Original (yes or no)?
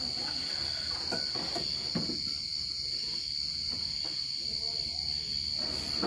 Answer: yes